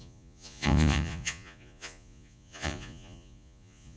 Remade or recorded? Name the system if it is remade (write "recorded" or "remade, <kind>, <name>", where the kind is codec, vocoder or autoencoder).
remade, vocoder, Vocos